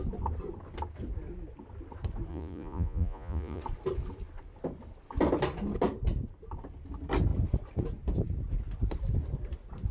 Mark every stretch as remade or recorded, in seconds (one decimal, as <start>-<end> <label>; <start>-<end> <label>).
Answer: 0.0-2.3 recorded; 2.3-3.6 remade; 3.6-9.9 recorded